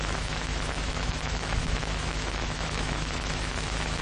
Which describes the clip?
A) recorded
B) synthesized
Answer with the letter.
B